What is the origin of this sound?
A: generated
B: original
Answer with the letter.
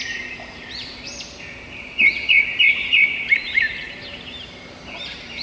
A